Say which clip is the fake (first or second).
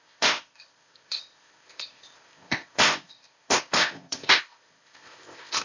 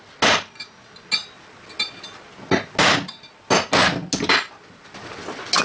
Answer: first